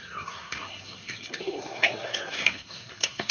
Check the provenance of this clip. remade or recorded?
remade